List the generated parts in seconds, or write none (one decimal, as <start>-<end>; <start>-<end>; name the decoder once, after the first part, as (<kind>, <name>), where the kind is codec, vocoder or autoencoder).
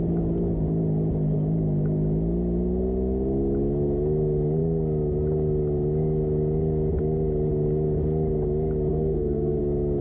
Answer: 8.9-9.6 (autoencoder, DAC-VAE)